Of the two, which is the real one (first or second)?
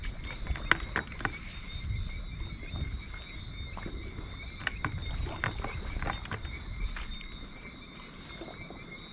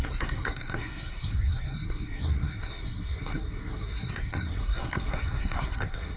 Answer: first